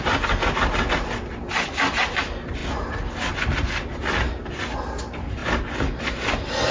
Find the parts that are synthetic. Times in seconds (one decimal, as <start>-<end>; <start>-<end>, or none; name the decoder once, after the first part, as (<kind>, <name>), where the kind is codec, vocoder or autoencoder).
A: none